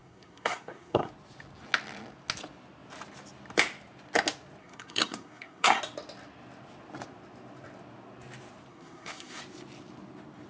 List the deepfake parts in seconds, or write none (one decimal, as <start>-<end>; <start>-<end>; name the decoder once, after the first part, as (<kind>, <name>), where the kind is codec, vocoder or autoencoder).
0.0-1.1 (codec, SNAC); 4.6-5.8; 8.7-9.4